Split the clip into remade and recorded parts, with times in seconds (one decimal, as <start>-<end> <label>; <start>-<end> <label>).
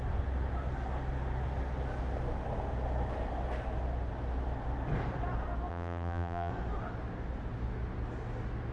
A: 0.0-5.7 recorded; 5.7-6.5 remade; 6.5-8.7 recorded